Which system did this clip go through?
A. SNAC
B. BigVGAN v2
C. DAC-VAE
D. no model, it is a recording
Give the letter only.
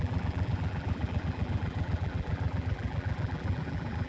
B